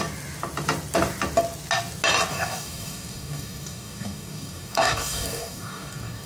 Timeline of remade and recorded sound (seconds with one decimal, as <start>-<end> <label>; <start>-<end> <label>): 0.0-2.3 recorded; 2.3-6.3 remade